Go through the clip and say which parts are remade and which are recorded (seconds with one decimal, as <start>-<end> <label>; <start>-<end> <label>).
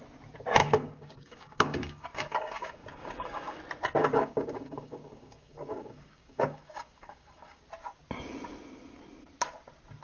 0.0-0.6 recorded; 0.6-3.6 remade; 3.6-4.0 recorded; 4.0-7.6 remade; 7.6-10.0 recorded